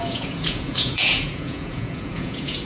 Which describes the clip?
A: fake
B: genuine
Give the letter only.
A